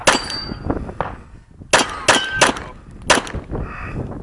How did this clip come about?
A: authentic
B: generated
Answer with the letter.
A